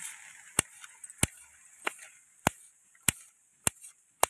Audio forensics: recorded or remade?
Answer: recorded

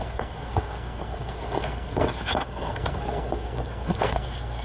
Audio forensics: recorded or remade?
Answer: remade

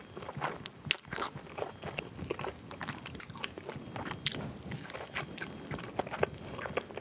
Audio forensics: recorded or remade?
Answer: recorded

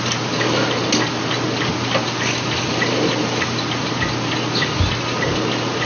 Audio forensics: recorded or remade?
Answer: recorded